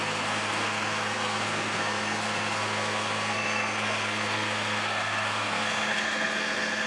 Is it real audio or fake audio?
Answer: fake